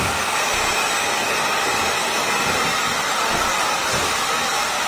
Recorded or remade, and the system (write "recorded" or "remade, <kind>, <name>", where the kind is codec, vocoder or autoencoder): recorded